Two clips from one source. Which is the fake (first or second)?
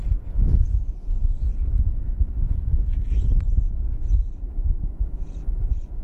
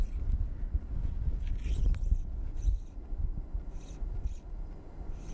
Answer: first